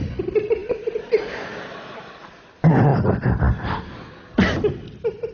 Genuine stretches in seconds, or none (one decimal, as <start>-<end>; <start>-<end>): 0.0-5.3

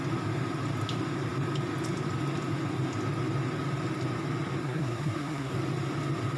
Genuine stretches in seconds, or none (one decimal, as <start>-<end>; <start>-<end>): 0.0-4.6; 5.5-6.4

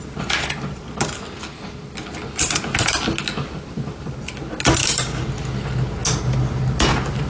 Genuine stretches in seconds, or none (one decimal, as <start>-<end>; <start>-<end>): 0.0-4.8; 5.3-7.3